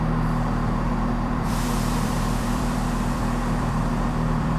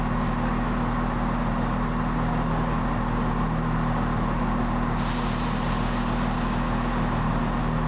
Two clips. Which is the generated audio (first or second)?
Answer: first